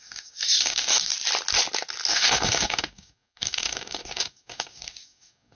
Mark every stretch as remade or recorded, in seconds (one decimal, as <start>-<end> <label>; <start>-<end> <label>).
0.0-1.1 remade; 1.1-2.1 recorded; 2.1-5.5 remade